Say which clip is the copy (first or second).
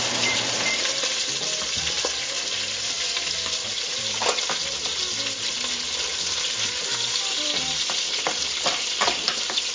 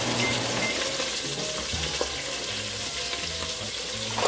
first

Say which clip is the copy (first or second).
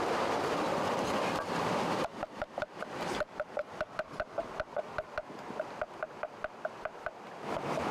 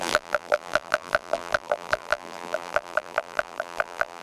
second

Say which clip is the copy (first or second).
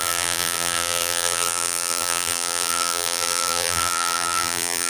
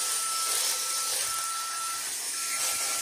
first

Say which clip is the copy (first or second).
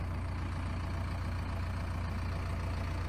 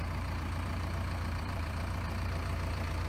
second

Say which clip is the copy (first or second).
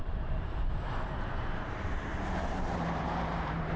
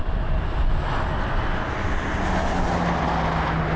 first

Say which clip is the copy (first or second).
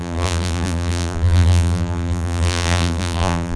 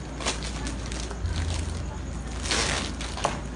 first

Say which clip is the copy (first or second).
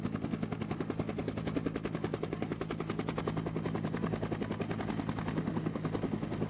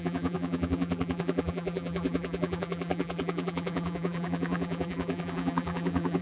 second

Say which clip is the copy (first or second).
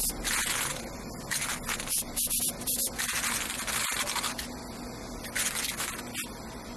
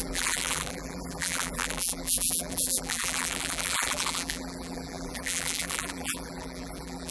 second